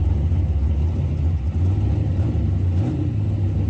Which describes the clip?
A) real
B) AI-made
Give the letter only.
A